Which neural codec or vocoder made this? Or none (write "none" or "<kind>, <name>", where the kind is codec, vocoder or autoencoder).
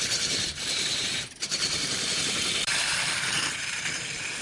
vocoder, BigVGAN v2